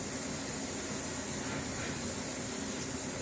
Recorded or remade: recorded